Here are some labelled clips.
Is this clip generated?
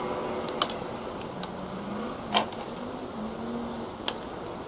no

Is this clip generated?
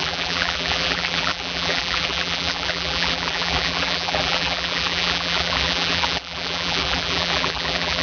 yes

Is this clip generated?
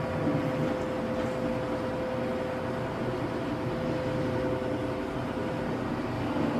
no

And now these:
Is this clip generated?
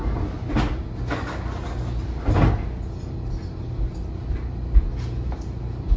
no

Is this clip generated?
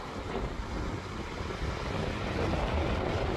no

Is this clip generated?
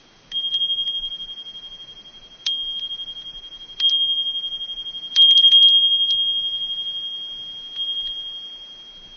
no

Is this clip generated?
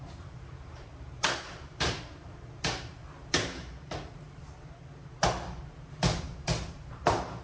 yes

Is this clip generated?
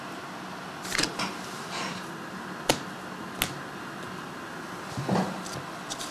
no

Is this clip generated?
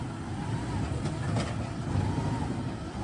no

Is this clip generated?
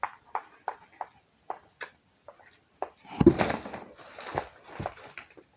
no